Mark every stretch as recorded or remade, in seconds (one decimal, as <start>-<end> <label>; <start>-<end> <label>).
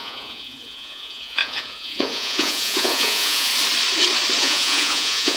0.0-3.5 remade; 3.5-4.4 recorded; 4.4-5.4 remade